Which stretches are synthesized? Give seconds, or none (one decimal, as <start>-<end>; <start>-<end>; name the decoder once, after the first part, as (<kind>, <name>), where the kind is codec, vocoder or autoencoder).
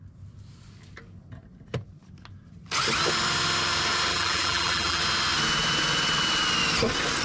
4.1-5.0 (vocoder, BigVGAN v2)